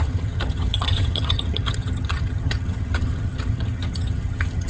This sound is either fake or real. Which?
fake